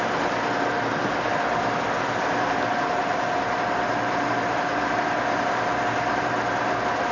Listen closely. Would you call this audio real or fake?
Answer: real